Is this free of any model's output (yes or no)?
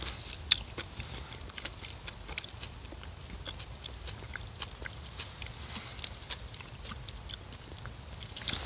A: yes